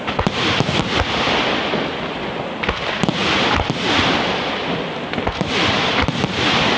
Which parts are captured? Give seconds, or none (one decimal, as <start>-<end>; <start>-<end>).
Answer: 0.0-3.2